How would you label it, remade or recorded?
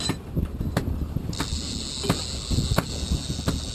recorded